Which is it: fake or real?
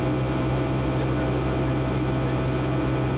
real